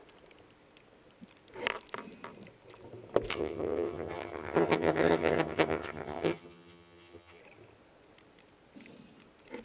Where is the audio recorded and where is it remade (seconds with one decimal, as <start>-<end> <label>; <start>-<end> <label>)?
0.0-3.3 recorded; 3.3-7.4 remade; 7.4-9.6 recorded